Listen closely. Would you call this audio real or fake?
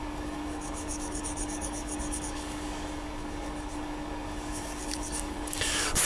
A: fake